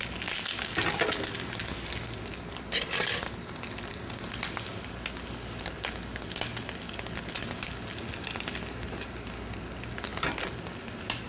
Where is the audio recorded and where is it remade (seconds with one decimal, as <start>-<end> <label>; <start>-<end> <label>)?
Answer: 0.0-11.3 recorded